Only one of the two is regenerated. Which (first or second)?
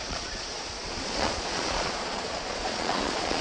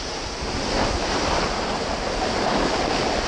first